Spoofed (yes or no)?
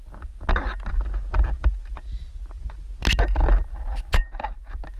no